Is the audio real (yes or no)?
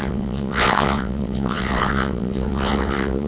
no